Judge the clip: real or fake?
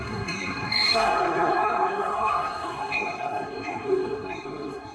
fake